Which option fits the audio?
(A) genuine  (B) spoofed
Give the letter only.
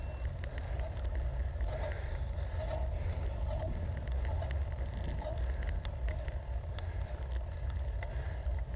A